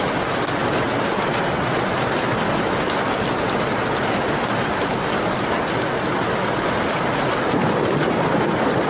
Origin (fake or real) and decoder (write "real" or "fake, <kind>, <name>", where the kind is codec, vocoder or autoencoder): real